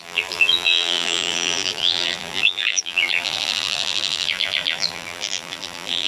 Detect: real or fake fake